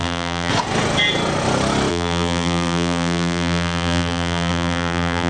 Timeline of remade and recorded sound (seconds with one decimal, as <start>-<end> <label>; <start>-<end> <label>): 0.0-0.5 remade; 0.5-1.9 recorded; 1.9-5.3 remade